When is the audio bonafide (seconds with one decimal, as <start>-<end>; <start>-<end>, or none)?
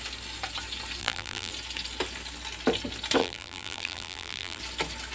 0.0-1.0; 1.5-3.2; 4.6-5.1